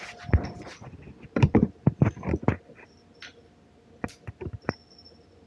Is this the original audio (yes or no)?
yes